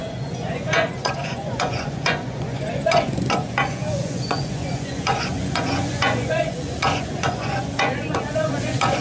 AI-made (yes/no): yes